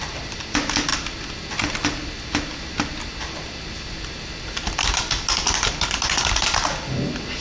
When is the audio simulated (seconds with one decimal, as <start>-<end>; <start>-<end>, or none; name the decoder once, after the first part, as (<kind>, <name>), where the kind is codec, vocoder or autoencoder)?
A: none